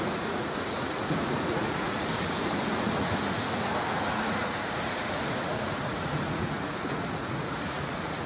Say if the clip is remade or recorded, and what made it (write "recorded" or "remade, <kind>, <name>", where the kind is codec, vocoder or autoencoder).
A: remade, vocoder, Vocos